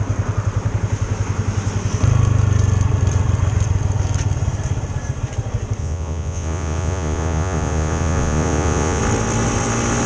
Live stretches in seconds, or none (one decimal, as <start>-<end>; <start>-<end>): 0.0-5.8; 9.0-10.1